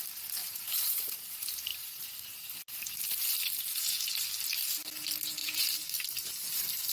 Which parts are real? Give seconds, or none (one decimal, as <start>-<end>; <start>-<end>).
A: 0.0-0.4; 1.1-1.7; 2.5-5.4